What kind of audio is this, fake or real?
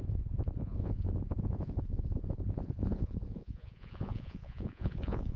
fake